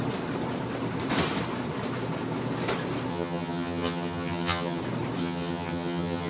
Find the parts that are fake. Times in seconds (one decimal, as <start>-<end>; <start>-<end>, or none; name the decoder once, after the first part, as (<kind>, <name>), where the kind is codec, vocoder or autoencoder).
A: 3.1-4.8 (vocoder, HiFi-GAN); 5.2-6.3